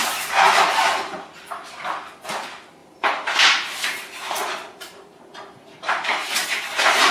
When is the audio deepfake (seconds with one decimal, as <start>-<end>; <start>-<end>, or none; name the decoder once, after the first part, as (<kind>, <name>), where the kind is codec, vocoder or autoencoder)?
2.8-7.1 (vocoder, BigVGAN v2)